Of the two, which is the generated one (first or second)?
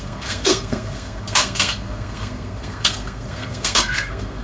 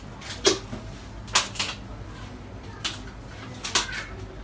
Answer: first